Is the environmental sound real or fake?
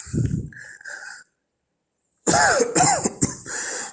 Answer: fake